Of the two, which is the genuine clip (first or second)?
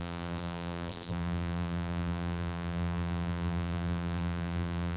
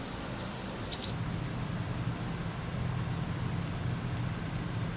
second